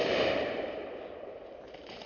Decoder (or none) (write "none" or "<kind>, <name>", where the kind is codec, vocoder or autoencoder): none